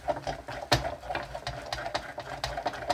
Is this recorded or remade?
recorded